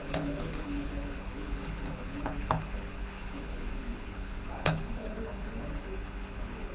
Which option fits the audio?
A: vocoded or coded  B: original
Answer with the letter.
A